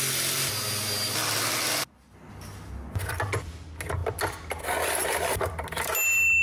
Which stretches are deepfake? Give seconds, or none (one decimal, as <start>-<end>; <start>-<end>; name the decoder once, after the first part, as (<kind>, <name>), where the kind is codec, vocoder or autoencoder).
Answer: none